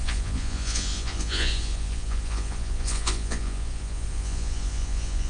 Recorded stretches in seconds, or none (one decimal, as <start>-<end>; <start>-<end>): none